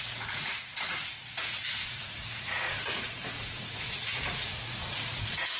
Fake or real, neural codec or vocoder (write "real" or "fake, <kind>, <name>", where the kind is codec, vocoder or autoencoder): fake, vocoder, Vocos